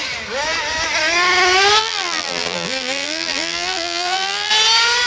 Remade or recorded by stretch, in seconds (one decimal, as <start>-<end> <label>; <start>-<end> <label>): 0.0-1.8 recorded; 1.8-4.5 remade; 4.5-5.1 recorded